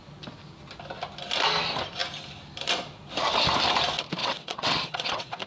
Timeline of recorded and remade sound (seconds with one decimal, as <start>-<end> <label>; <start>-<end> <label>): 0.0-4.2 recorded; 4.2-5.5 remade